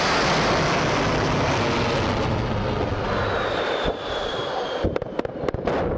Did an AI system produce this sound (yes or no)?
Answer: no